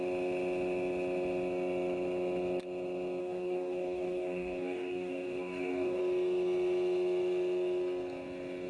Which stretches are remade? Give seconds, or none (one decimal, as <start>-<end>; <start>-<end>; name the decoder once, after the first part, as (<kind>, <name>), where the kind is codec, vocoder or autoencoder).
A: 3.2-6.0 (codec, DAC)